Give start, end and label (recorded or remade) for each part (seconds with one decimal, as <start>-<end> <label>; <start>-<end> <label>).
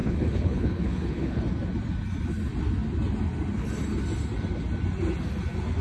0.0-1.4 remade; 1.4-5.8 recorded